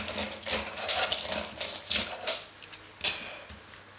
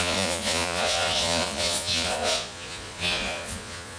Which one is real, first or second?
first